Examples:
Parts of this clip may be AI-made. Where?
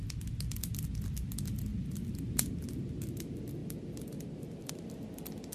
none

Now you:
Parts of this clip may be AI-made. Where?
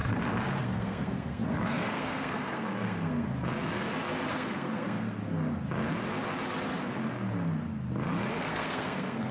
0.6-3.3; 4.3-5.2; 8.4-9.3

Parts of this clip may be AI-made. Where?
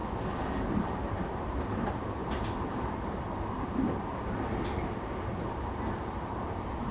0.7-2.2; 4.0-6.9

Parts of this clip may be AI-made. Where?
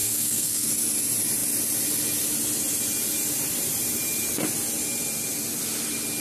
0.0-0.7